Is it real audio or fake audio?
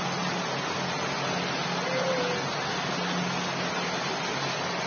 real